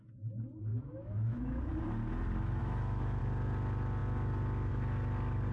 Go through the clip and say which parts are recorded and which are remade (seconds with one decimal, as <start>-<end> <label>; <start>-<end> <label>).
0.0-0.7 recorded; 0.7-1.6 remade; 1.6-2.6 recorded; 2.6-3.2 remade; 3.2-5.5 recorded